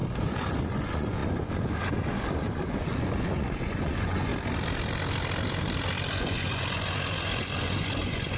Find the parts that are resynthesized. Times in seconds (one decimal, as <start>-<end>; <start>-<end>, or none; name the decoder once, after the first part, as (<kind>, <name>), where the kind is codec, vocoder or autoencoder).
0.0-4.3 (vocoder, Vocos); 6.1-8.4